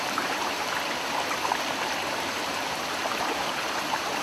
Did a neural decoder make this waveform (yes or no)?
yes